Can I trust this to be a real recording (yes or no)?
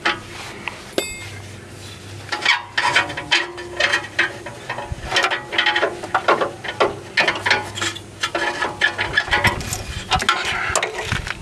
yes